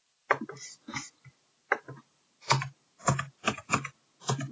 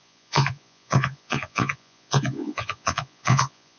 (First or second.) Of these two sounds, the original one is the first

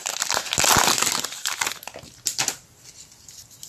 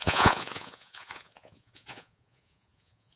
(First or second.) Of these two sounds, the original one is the first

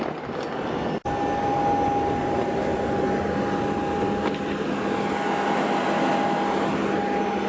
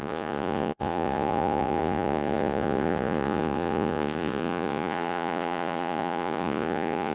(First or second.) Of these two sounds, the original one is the first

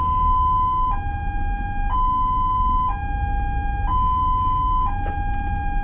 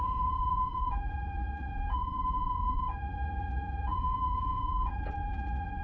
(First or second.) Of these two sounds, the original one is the first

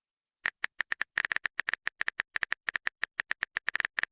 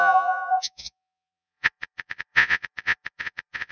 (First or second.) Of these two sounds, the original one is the first